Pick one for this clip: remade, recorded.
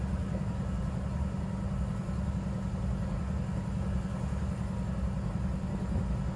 recorded